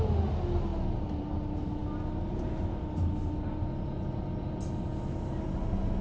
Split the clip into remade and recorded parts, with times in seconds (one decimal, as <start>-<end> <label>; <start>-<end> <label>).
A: 0.0-6.0 recorded